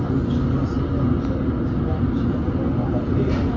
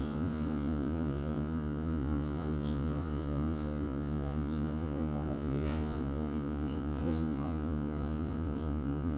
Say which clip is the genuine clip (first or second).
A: first